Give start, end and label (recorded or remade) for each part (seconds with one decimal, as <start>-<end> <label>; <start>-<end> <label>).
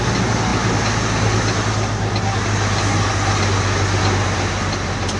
0.0-5.2 recorded